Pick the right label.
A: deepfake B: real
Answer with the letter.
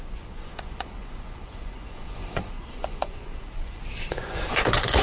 A